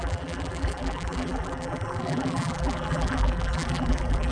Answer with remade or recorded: remade